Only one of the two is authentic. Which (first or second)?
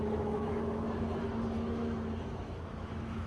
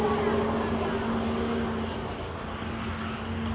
second